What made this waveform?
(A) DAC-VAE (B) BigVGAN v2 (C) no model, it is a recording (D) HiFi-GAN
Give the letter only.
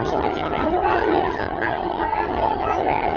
D